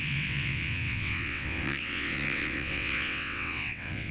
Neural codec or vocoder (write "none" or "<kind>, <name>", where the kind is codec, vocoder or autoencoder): vocoder, WaveNeXt